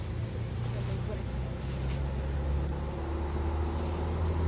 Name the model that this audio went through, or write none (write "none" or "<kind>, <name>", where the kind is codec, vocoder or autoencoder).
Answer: none